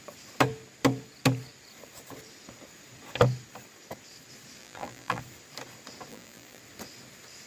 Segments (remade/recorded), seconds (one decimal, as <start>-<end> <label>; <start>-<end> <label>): 0.0-4.6 recorded; 4.6-5.2 remade; 5.2-6.1 recorded; 6.1-6.6 remade; 6.6-7.5 recorded